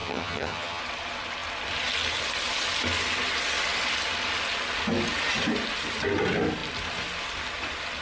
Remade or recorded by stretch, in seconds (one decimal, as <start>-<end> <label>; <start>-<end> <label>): 0.0-0.8 remade; 0.8-8.0 recorded